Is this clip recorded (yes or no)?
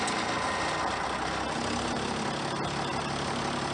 yes